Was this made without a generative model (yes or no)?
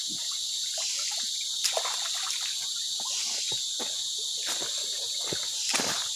yes